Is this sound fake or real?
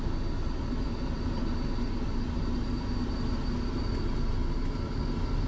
real